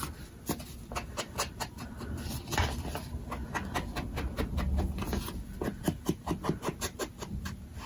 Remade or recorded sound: remade